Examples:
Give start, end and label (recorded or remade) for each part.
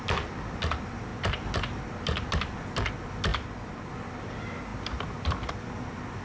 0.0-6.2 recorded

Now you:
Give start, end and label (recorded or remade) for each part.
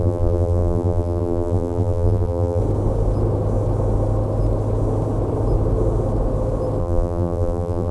0.0-2.6 remade; 2.6-6.8 recorded; 6.8-7.9 remade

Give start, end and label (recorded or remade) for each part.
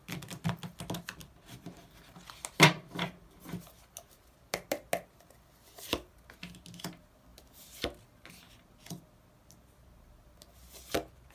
0.0-11.3 recorded